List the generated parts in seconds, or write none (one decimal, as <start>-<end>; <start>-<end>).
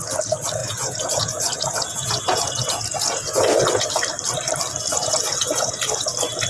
0.6-3.9; 4.9-6.1